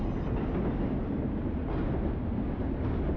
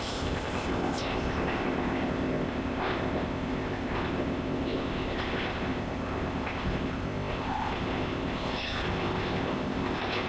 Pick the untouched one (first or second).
first